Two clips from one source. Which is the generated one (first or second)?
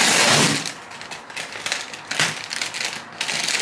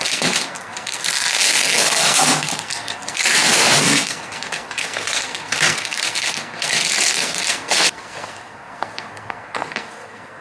second